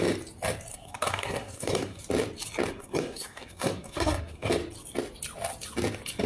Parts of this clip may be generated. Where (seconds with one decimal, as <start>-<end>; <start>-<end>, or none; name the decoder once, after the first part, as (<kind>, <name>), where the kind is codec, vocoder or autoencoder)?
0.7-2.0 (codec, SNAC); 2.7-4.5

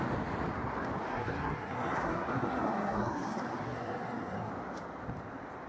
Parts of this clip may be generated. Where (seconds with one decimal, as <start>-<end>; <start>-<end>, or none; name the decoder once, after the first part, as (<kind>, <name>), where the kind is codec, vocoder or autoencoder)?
1.1-4.5 (codec, SNAC)

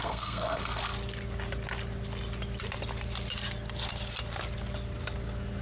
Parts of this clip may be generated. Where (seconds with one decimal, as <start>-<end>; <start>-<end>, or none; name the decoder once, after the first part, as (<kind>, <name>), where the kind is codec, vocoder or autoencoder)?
0.0-0.8 (codec, SNAC)

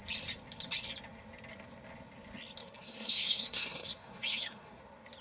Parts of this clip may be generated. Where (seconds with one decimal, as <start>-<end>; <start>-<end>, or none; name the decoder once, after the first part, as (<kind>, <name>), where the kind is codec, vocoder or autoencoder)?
2.6-4.8 (codec, SNAC)